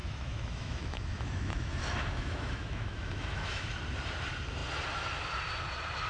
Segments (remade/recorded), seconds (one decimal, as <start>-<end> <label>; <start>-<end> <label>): 0.0-3.7 remade; 3.7-6.1 recorded